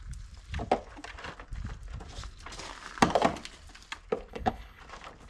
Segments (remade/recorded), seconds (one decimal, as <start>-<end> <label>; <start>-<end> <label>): 0.0-4.3 recorded; 4.3-4.8 remade; 4.8-5.3 recorded